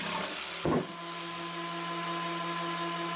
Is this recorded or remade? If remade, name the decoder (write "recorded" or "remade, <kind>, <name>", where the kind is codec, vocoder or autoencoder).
recorded